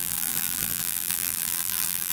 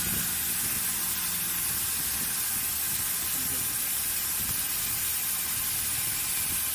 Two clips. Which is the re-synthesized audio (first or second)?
first